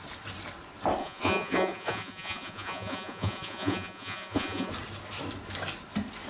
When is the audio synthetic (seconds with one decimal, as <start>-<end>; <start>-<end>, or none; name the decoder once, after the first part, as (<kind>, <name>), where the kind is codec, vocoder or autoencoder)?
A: 1.0-4.7 (vocoder, Vocos)